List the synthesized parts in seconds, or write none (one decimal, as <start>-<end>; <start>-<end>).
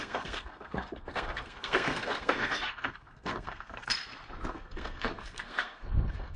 0.0-3.9; 4.5-6.4